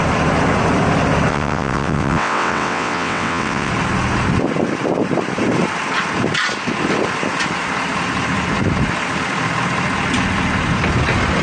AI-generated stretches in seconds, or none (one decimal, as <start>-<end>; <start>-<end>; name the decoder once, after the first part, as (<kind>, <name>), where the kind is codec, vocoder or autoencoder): 1.3-3.7 (vocoder, WaveNeXt)